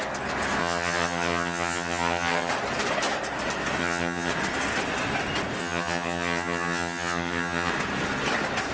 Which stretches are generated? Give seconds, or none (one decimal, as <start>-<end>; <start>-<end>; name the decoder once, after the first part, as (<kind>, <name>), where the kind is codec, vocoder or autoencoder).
0.6-2.5 (vocoder, HiFi-GAN); 3.8-4.3; 5.6-7.7